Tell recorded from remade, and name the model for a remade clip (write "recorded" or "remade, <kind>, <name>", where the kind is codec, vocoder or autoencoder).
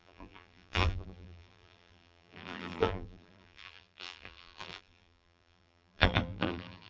remade, vocoder, BigVGAN v2